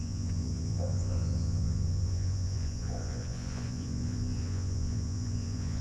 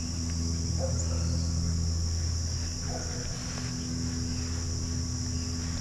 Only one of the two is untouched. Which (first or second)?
second